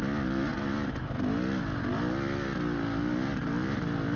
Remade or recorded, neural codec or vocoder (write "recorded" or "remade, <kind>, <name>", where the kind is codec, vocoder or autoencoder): recorded